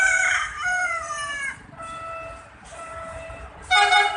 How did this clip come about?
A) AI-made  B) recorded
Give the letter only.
A